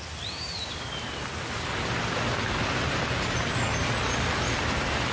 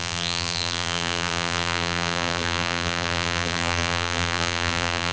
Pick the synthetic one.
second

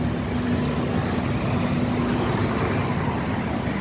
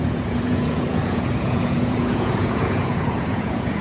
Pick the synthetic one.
second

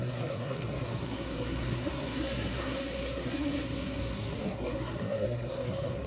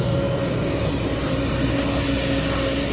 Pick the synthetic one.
first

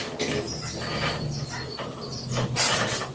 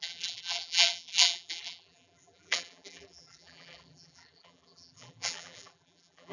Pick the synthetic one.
second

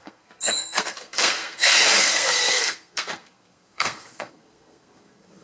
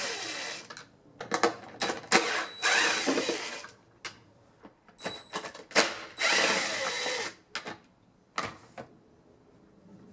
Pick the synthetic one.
first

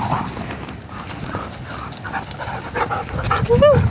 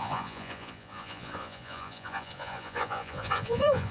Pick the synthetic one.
second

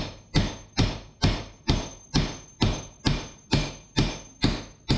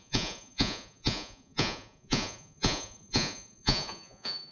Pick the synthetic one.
second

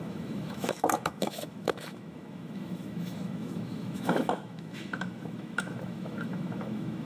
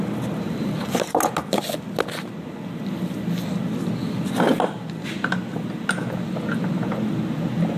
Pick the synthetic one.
first